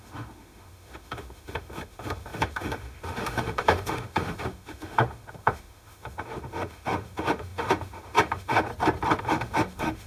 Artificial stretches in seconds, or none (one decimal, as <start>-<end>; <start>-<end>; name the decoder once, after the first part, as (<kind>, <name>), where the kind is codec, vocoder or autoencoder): 0.0-8.7 (autoencoder, DAC-VAE); 9.2-10.1